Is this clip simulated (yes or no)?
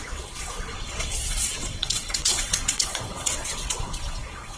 yes